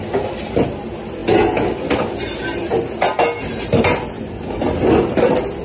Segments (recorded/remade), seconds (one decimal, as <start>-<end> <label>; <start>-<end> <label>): 0.0-5.6 recorded